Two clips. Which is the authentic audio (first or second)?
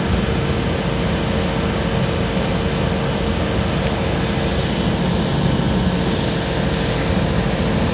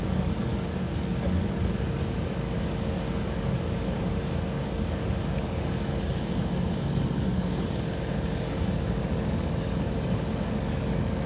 first